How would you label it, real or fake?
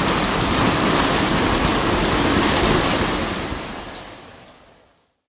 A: real